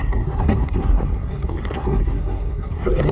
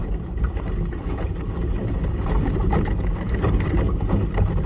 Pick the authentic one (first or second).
second